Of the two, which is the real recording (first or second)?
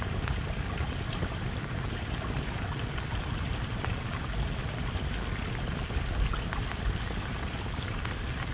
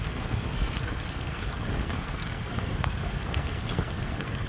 first